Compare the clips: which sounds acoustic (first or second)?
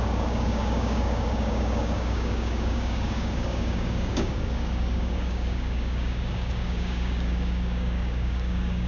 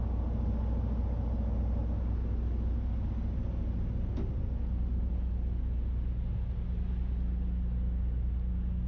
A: second